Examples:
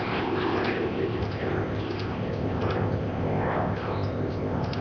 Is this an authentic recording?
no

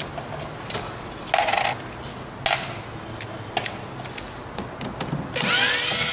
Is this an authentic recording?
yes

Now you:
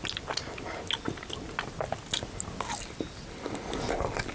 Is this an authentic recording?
yes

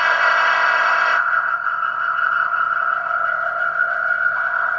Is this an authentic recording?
no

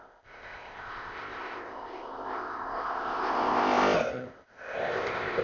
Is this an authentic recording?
no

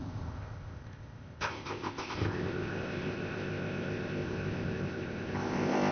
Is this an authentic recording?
no